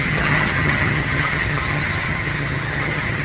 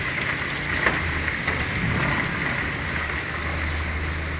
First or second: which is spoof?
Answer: first